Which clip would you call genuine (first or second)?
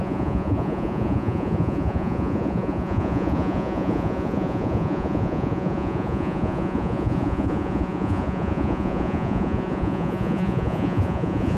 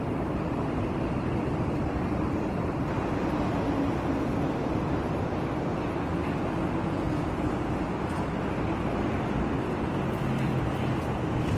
second